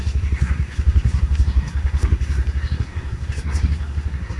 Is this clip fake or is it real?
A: fake